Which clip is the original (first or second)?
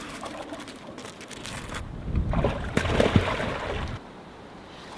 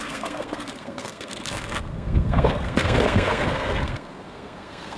first